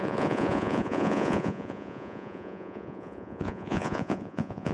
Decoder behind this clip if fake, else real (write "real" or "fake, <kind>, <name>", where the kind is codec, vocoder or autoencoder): fake, vocoder, Vocos